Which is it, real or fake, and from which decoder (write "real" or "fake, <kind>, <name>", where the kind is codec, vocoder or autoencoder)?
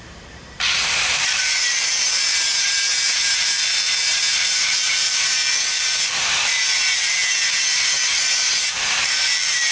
fake, vocoder, BigVGAN v2